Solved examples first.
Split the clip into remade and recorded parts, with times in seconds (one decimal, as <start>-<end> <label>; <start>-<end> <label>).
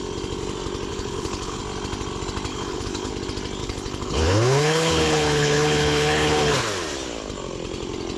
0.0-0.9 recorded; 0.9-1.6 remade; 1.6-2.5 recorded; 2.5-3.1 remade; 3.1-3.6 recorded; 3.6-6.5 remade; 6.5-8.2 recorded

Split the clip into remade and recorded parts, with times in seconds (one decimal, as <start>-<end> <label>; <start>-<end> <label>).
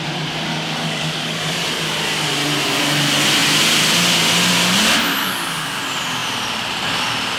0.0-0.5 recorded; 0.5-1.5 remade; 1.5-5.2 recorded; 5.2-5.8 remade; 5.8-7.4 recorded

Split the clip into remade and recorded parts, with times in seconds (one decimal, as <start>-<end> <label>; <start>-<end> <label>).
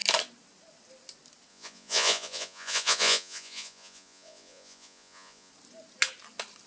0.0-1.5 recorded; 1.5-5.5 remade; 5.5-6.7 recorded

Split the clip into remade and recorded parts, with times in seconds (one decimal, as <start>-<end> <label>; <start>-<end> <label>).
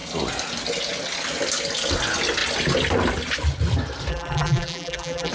0.0-4.1 recorded; 4.1-5.3 remade